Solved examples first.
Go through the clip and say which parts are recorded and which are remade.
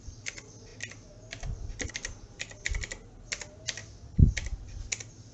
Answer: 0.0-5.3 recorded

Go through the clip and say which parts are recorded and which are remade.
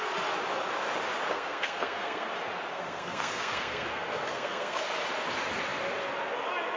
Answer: 0.0-1.3 recorded; 1.3-2.3 remade; 2.3-2.7 recorded; 2.7-4.8 remade; 4.8-6.8 recorded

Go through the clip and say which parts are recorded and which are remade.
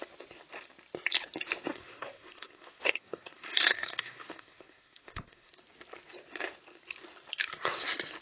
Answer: 0.0-1.7 recorded; 1.7-5.5 remade; 5.5-8.2 recorded